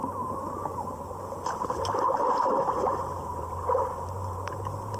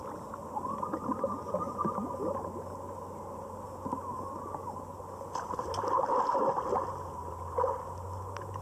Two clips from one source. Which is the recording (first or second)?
second